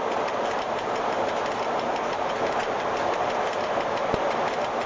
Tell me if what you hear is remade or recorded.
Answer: recorded